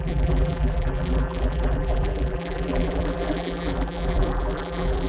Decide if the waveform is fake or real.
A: fake